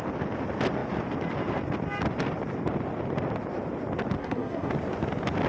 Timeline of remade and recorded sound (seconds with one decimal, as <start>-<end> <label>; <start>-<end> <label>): 0.0-4.2 recorded; 4.2-4.7 remade; 4.7-5.5 recorded

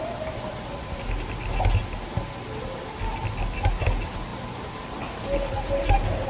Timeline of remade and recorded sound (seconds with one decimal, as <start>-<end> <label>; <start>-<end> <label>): 0.0-6.3 recorded

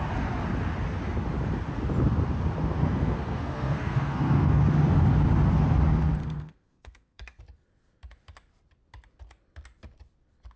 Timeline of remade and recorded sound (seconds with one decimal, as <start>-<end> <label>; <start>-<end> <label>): 0.0-2.8 recorded; 2.8-4.6 remade; 4.6-6.2 recorded; 6.2-7.4 remade; 7.4-10.6 recorded